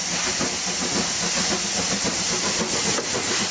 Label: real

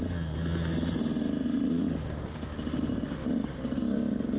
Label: real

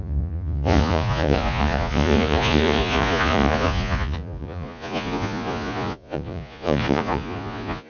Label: fake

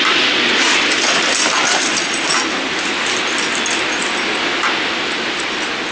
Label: real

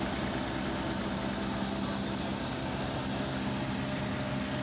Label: real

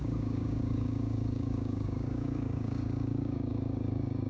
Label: fake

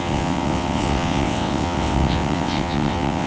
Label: fake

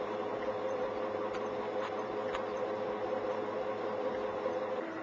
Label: real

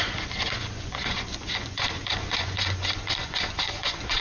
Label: fake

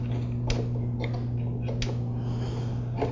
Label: real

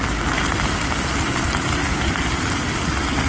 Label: real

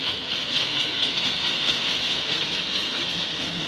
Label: fake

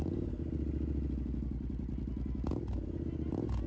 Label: real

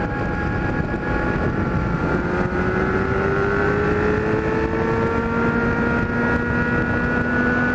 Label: real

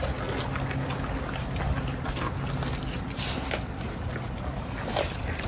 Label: real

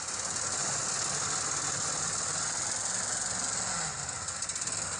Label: real